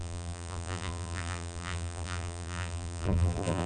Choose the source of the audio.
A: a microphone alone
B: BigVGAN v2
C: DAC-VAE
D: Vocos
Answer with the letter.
B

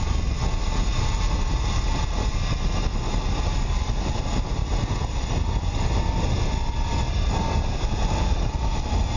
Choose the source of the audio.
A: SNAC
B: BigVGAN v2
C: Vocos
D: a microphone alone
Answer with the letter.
D